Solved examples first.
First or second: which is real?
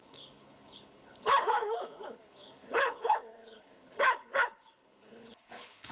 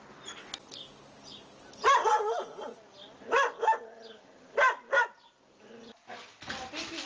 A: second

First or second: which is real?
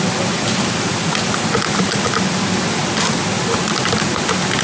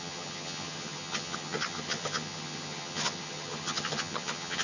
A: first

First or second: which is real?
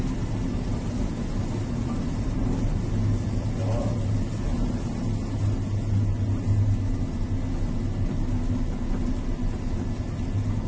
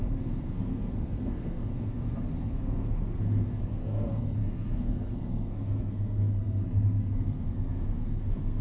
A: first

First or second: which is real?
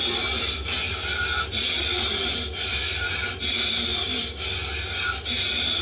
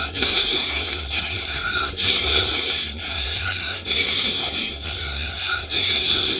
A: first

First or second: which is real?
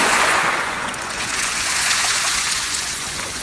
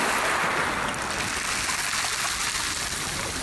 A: second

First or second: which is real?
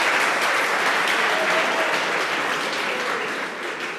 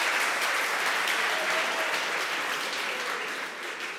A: first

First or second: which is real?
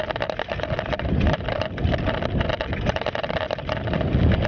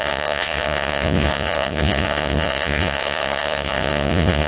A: first